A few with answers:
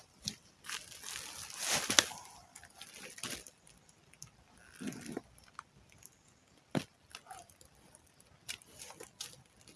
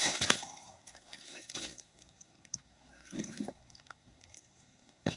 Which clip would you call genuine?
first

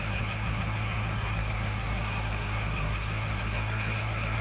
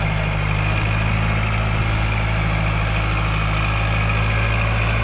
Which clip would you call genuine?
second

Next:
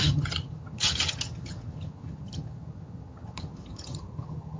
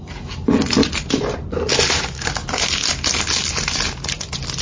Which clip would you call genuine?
second